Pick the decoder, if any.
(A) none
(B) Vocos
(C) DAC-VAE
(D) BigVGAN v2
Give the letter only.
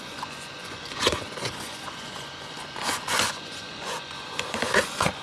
B